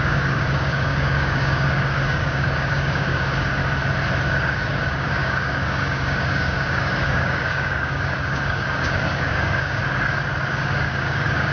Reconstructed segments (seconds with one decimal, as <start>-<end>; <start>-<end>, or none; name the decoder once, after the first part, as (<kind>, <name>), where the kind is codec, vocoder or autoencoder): 0.0-3.6 (codec, DAC); 4.2-9.8; 10.5-11.5